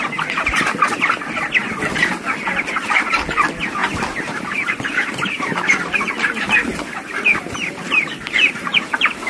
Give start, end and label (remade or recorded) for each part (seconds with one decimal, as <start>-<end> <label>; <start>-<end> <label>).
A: 0.0-3.8 recorded; 3.8-9.3 remade